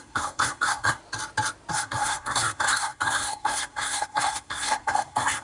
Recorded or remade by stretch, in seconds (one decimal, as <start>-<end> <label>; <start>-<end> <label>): 0.0-1.0 remade; 1.0-1.7 recorded; 1.7-5.4 remade